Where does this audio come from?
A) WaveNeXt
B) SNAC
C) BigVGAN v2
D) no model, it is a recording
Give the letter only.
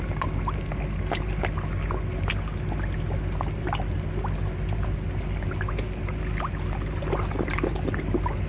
D